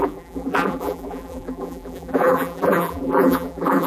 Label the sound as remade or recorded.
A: remade